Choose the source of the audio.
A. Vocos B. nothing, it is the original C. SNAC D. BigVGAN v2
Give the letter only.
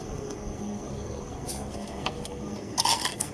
C